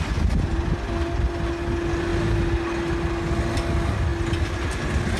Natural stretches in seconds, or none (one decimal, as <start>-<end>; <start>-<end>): 0.0-5.2